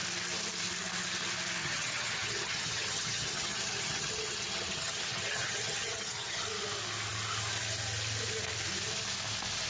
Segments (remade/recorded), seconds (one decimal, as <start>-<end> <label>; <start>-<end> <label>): 0.0-1.6 recorded; 1.6-6.4 remade; 6.4-9.7 recorded